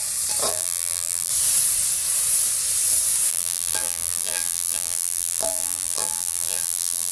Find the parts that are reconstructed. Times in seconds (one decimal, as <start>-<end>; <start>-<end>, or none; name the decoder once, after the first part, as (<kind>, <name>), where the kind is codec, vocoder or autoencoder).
0.5-1.3 (vocoder, BigVGAN v2); 3.3-7.1